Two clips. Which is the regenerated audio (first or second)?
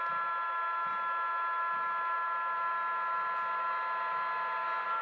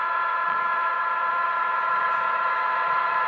second